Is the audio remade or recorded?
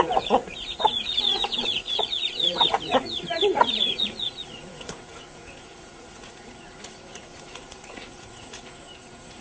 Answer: remade